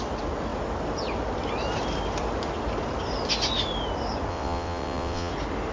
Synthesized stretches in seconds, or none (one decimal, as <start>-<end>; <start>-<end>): 4.3-5.3